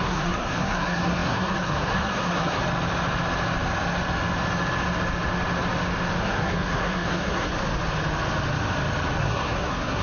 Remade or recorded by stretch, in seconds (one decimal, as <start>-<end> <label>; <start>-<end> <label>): 0.0-2.6 remade; 2.6-6.2 recorded; 6.2-7.5 remade; 7.5-9.2 recorded; 9.2-10.0 remade